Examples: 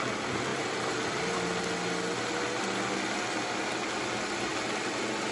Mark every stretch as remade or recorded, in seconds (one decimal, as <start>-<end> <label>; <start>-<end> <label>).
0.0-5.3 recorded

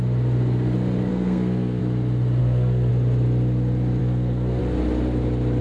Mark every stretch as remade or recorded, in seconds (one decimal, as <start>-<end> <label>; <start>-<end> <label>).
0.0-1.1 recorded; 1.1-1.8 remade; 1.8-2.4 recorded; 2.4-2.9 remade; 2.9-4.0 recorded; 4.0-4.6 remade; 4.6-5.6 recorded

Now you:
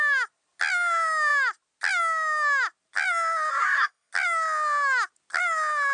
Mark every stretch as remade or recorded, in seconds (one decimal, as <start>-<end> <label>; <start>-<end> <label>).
0.0-3.5 recorded; 3.5-4.1 remade; 4.1-5.9 recorded